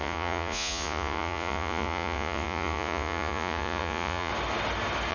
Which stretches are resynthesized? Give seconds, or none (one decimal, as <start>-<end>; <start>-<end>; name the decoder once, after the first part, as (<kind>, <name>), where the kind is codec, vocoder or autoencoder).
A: 0.0-4.3 (vocoder, Vocos)